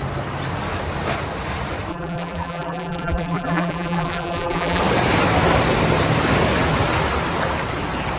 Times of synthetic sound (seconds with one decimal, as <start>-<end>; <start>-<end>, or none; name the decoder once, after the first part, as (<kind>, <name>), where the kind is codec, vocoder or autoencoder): 1.9-4.8 (vocoder, BigVGAN v2)